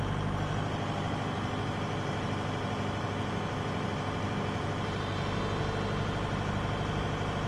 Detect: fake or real real